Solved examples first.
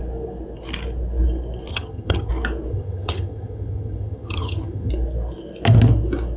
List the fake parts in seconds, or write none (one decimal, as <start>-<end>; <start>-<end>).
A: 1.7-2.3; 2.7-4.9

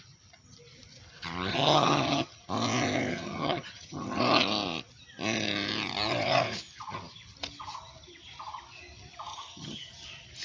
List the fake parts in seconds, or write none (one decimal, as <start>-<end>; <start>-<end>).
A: 1.5-2.4; 3.1-4.2; 9.3-9.9

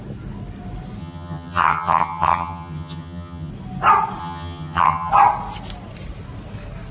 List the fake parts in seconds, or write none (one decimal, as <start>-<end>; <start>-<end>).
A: 1.0-3.5; 4.2-5.1

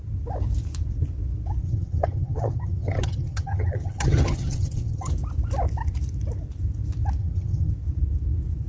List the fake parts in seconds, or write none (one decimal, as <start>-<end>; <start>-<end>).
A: 1.6-5.1; 7.2-7.7

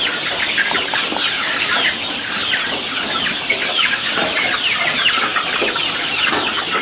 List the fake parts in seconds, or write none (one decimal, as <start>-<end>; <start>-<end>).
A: none